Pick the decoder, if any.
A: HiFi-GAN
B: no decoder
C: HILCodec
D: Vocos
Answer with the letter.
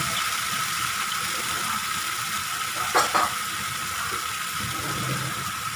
B